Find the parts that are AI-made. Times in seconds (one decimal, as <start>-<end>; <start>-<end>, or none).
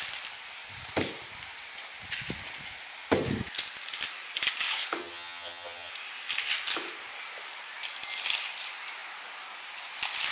5.0-5.9